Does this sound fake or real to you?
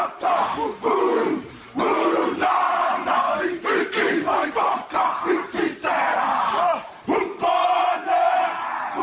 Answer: fake